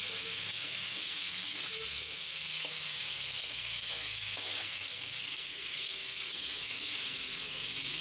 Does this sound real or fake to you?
fake